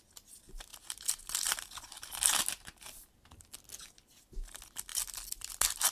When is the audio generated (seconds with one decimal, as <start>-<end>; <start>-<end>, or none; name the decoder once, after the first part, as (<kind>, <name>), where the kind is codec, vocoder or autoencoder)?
none